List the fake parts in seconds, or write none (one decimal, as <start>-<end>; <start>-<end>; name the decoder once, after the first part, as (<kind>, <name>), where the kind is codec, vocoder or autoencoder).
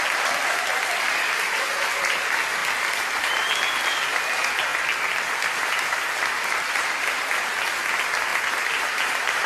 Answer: 8.3-9.5 (vocoder, BigVGAN v2)